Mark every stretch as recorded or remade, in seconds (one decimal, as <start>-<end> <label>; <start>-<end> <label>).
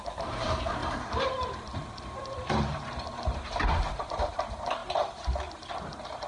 0.0-6.3 remade